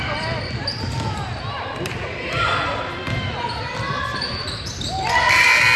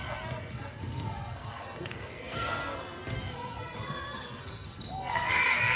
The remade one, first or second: second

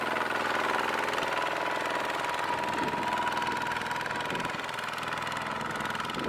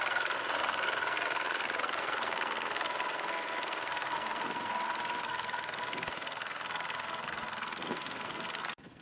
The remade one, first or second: second